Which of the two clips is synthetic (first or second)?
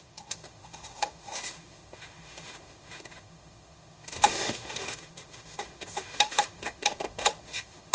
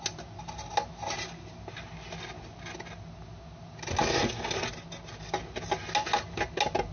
first